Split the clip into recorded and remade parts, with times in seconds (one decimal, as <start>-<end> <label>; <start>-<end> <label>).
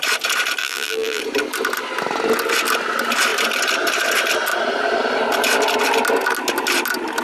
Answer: 0.0-0.6 recorded; 0.6-1.2 remade; 1.2-7.2 recorded